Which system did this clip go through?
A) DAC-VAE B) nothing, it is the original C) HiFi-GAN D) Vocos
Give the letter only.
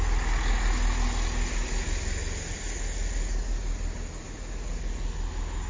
B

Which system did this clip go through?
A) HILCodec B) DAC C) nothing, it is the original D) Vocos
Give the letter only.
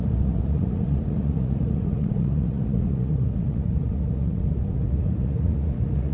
D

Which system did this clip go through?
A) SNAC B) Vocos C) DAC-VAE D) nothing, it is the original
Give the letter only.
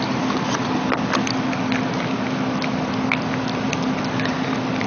D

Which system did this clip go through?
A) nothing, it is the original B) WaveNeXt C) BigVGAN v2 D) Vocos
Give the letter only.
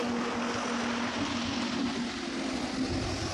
A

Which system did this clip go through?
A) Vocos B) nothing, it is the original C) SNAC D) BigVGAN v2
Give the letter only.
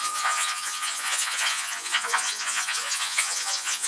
A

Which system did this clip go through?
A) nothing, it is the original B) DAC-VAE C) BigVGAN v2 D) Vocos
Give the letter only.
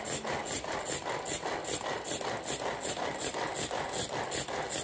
A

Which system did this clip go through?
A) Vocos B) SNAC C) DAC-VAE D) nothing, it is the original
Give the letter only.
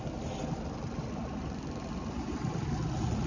D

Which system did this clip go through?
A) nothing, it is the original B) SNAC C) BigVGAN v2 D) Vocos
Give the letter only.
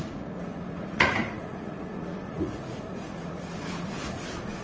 D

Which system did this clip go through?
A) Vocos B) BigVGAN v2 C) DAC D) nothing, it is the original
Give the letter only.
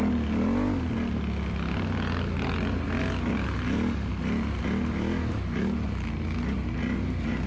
D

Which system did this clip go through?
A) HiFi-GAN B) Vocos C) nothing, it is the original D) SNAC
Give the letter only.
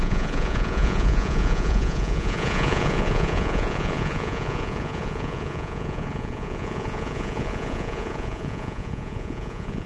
B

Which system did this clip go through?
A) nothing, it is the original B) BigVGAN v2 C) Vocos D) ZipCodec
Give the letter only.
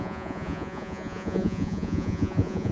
C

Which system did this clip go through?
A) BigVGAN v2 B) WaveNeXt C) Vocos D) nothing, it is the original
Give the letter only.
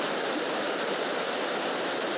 D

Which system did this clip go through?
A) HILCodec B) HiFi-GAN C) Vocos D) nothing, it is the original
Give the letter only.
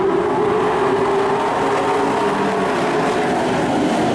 D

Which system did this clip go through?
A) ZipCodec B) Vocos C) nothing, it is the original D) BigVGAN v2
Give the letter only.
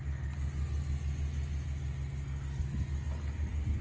C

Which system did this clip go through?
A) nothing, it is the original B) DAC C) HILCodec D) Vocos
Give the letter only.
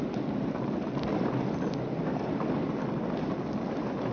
A